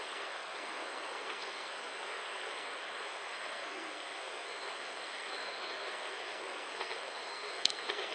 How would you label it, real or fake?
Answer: fake